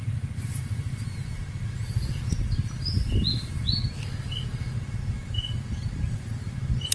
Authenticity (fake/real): real